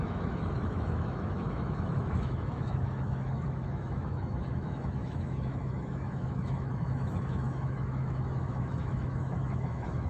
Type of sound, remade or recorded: remade